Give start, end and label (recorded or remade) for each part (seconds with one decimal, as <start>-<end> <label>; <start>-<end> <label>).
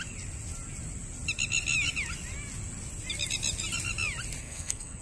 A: 0.0-4.4 recorded; 4.4-5.0 remade